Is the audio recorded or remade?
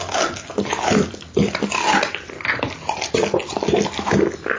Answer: recorded